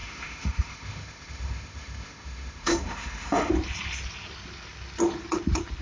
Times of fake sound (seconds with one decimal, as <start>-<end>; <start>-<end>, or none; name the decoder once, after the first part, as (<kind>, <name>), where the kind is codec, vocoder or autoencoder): 0.0-3.5 (autoencoder, DAC-VAE)